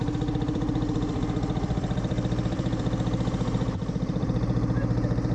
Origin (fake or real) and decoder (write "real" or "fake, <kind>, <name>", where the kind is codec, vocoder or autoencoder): fake, vocoder, BigVGAN v2